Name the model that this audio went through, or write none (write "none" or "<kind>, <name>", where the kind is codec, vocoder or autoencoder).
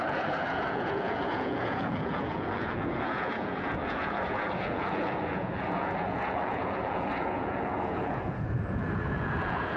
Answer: vocoder, Vocos